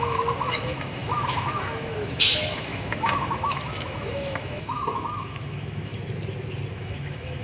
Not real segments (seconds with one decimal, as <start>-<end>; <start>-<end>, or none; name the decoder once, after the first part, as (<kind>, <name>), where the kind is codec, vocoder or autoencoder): 0.0-5.9 (autoencoder, DAC-VAE); 6.7-7.4